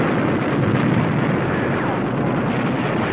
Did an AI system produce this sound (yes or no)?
no